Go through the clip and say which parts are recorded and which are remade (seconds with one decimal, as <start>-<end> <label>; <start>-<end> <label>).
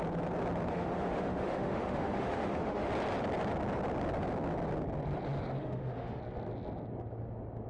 0.0-0.7 recorded; 0.7-2.9 remade; 2.9-5.6 recorded; 5.6-6.2 remade; 6.2-7.7 recorded